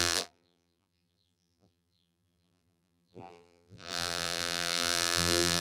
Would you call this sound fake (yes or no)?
yes